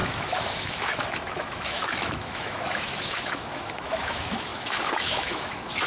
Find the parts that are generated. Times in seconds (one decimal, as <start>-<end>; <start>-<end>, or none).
0.0-5.9